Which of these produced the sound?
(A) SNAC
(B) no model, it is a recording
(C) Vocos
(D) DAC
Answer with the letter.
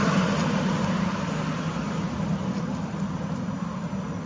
B